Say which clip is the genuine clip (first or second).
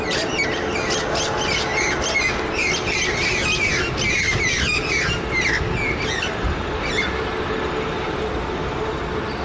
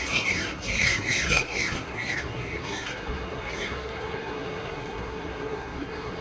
first